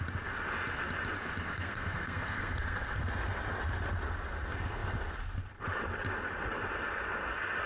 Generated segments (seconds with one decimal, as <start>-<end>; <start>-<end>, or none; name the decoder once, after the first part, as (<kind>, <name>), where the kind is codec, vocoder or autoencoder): 1.5-3.0 (codec, SNAC)